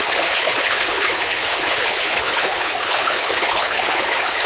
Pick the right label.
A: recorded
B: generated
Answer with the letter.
B